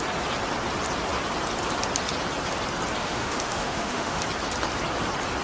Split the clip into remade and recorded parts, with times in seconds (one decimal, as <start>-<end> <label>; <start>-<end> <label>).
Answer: 0.0-3.0 recorded; 3.0-4.2 remade; 4.2-5.4 recorded